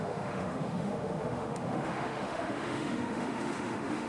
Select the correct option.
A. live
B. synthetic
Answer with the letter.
B